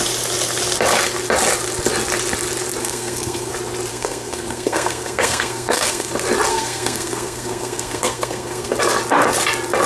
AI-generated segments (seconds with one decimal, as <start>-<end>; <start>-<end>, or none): 2.8-3.5; 3.9-6.1; 6.5-8.7